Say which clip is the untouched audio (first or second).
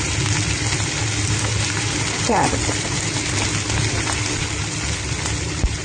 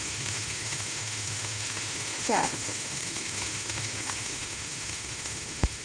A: first